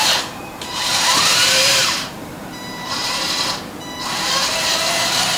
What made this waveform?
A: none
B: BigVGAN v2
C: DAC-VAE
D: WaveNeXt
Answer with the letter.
B